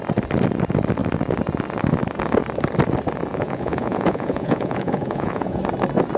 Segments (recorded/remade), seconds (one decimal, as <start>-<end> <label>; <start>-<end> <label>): 0.0-3.3 recorded; 3.3-5.6 remade; 5.6-6.2 recorded